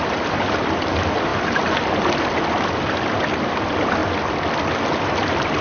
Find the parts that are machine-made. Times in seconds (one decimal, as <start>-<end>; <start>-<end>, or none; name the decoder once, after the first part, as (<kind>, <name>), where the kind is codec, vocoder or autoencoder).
none